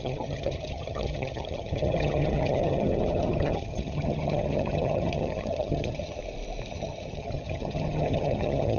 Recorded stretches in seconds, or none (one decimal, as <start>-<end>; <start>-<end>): 6.2-6.7